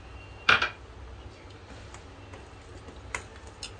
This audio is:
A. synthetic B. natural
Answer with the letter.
B